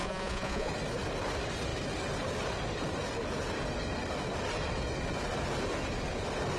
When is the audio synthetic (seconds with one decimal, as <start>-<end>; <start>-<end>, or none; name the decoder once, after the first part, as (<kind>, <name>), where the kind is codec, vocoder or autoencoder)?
0.0-0.7 (vocoder, Vocos)